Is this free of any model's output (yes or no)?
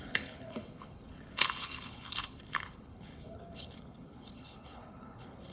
no